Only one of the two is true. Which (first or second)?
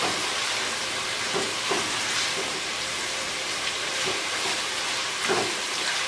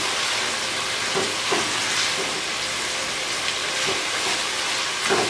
second